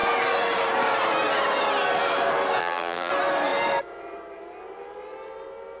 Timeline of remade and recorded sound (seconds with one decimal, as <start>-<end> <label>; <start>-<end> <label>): 0.0-2.6 recorded; 2.6-3.1 remade; 3.1-5.8 recorded

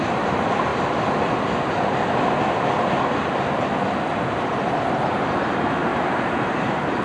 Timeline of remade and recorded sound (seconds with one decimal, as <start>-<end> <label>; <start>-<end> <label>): 0.0-0.7 remade; 0.7-4.9 recorded; 4.9-7.0 remade

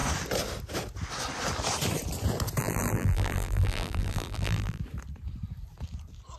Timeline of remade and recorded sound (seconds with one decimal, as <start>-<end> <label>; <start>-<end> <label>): 0.0-2.6 recorded; 2.6-4.8 remade; 4.8-6.4 recorded

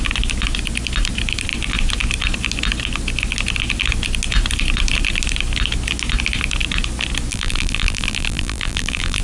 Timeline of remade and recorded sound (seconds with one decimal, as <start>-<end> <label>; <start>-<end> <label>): 0.0-7.3 recorded; 7.3-9.2 remade